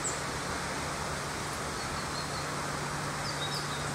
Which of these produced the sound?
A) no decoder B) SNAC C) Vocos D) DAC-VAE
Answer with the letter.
A